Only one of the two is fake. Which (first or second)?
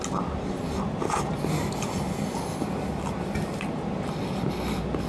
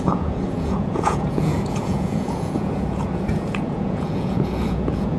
second